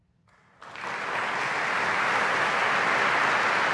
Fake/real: real